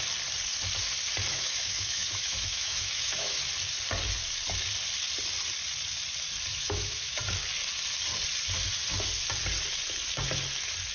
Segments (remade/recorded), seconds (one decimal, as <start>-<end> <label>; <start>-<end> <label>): 0.0-1.3 recorded; 1.3-3.4 remade; 3.4-6.5 recorded; 6.5-7.2 remade; 7.2-10.9 recorded